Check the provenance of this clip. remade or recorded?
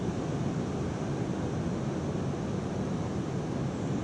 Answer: recorded